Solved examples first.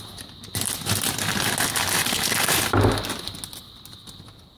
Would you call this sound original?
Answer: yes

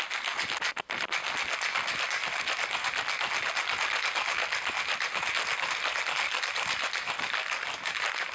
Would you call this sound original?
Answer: yes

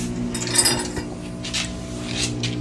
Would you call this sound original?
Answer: yes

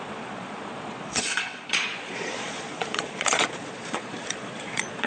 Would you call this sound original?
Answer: no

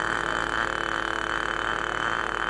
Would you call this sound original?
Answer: yes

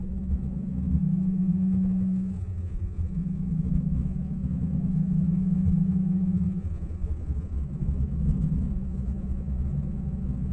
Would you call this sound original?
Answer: no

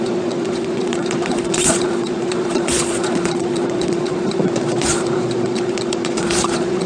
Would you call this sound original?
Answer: no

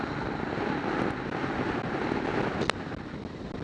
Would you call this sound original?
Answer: yes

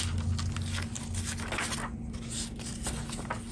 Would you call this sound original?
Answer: yes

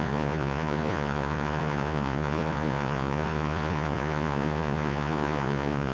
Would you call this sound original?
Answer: no